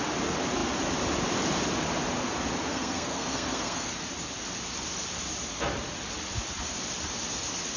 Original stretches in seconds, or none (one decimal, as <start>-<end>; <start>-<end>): 0.0-2.7; 3.9-7.8